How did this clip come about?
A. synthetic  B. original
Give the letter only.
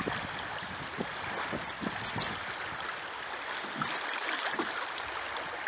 B